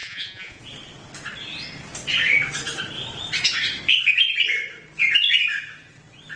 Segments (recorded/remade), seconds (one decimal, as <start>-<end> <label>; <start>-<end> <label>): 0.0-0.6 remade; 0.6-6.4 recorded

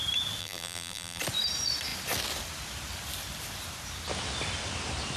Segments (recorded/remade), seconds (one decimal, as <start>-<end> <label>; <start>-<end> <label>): 0.0-0.4 recorded; 0.4-1.2 remade; 1.2-5.2 recorded

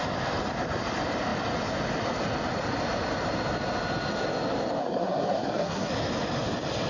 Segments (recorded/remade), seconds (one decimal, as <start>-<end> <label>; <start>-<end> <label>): 0.0-4.8 recorded; 4.8-5.9 remade; 5.9-6.9 recorded

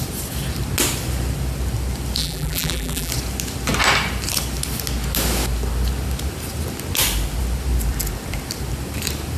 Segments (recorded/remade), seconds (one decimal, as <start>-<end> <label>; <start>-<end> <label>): 0.0-2.2 recorded; 2.2-3.1 remade; 3.1-9.4 recorded

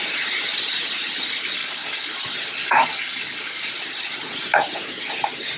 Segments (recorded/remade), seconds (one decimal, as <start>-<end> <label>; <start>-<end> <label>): 0.0-1.6 recorded; 1.6-2.1 remade; 2.1-2.6 recorded; 2.6-3.7 remade; 3.7-5.6 recorded